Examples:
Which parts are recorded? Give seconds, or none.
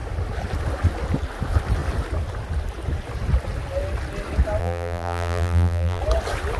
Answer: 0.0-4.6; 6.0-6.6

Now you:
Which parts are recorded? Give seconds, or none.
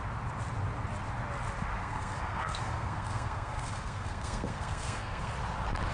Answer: 0.0-1.8; 5.3-5.9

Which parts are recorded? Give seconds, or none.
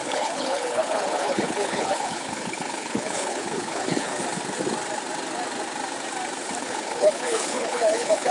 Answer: 4.1-6.6